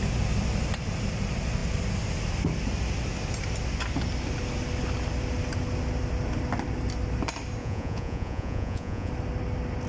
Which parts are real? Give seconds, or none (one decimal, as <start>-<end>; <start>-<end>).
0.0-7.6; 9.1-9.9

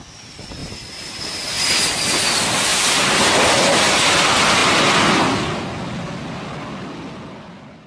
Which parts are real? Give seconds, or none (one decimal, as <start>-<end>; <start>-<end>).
0.0-0.6; 1.8-2.7; 3.2-7.9

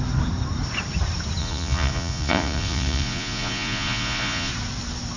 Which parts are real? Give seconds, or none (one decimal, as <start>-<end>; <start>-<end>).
0.0-1.4; 4.5-5.2

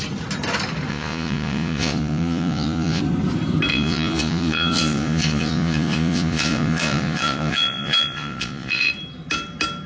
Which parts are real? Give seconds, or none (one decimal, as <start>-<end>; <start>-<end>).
0.0-0.9; 3.0-3.7; 8.9-9.9

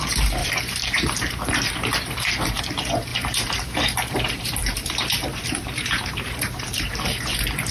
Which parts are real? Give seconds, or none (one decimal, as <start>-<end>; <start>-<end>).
0.0-0.4; 2.6-3.1; 4.1-4.6; 7.2-7.7